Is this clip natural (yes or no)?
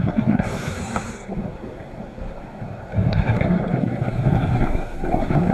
no